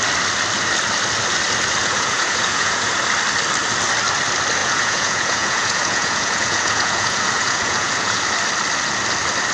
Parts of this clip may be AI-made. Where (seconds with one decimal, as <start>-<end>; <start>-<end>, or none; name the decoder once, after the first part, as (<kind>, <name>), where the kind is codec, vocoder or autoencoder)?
1.8-3.0 (vocoder, Vocos); 4.6-8.2